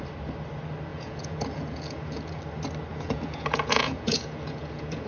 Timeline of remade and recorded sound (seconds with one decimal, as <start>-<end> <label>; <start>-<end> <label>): 0.0-0.9 recorded; 0.9-2.4 remade; 2.4-2.9 recorded; 2.9-5.1 remade